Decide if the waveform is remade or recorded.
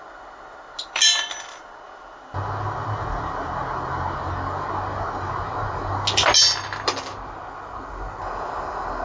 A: recorded